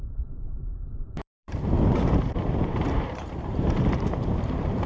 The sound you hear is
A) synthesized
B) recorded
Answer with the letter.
A